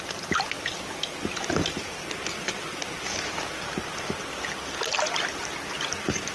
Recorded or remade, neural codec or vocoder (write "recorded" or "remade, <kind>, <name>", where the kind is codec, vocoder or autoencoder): recorded